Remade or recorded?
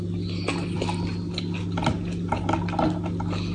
recorded